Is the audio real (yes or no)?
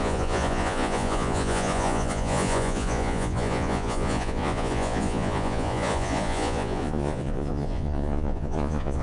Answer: no